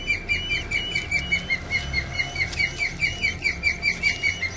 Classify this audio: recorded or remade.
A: recorded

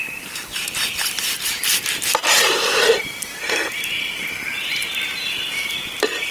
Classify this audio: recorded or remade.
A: remade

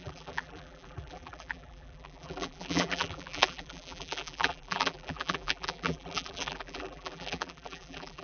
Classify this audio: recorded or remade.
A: remade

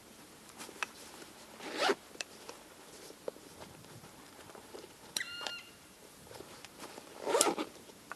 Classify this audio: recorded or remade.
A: remade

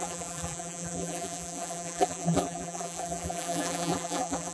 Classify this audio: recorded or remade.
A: remade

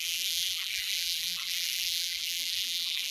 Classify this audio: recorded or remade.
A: remade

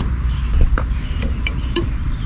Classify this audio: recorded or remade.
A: remade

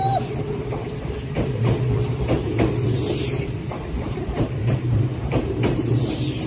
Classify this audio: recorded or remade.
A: remade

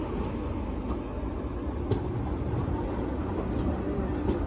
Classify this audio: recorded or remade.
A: recorded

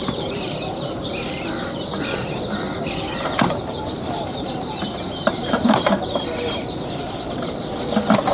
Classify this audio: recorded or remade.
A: remade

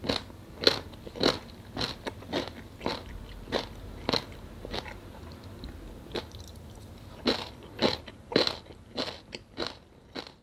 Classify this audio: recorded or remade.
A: remade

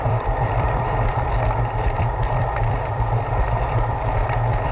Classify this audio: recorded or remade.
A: remade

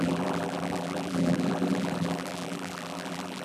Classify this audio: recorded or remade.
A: remade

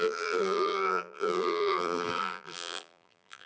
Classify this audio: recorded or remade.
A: remade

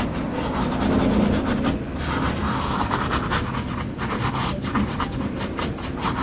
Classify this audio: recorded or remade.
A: recorded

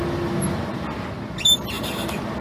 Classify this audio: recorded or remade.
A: recorded